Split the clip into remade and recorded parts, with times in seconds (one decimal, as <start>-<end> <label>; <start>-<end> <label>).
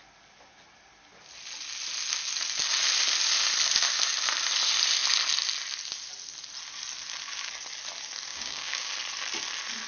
0.0-8.3 recorded; 8.3-8.9 remade; 8.9-9.9 recorded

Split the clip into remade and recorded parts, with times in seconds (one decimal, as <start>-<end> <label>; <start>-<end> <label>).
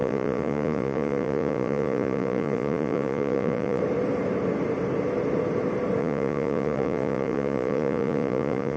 0.0-3.8 remade; 3.8-6.0 recorded; 6.0-8.8 remade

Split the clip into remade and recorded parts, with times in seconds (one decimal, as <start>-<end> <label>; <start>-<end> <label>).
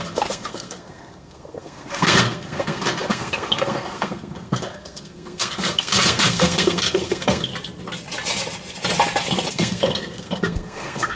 0.0-7.5 remade; 7.5-9.5 recorded; 9.5-11.2 remade